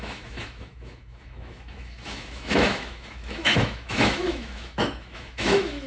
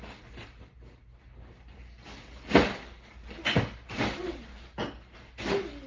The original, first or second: second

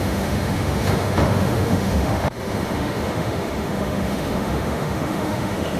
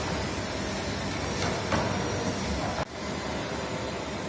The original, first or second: second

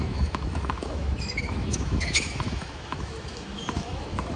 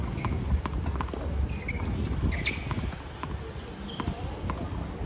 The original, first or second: second